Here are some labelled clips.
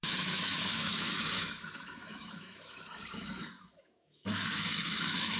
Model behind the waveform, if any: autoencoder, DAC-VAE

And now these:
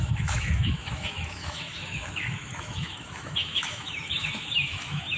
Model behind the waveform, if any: autoencoder, DAC-VAE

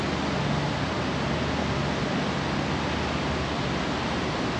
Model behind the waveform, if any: none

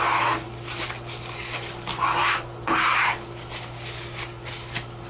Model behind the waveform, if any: none